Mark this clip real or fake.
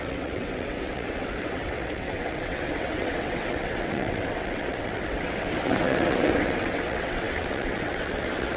fake